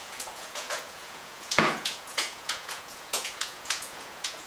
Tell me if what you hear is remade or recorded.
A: remade